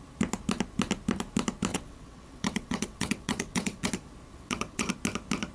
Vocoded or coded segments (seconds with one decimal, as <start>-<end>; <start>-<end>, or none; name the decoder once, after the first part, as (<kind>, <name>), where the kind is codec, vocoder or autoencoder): 1.7-3.9 (vocoder, WaveNeXt); 4.3-4.9